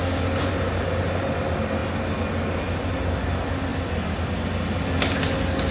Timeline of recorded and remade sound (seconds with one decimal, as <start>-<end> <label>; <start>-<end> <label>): 0.0-5.7 recorded